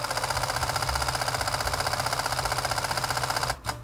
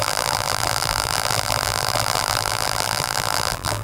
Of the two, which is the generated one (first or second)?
second